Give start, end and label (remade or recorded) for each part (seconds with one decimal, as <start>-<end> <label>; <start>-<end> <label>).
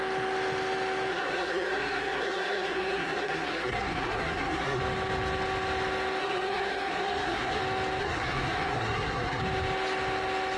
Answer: 0.0-1.1 recorded; 1.1-4.8 remade; 4.8-6.2 recorded; 6.2-7.6 remade; 7.6-8.0 recorded; 8.0-9.4 remade; 9.4-10.6 recorded